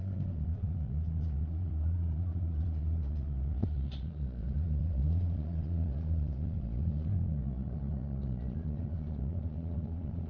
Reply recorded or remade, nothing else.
remade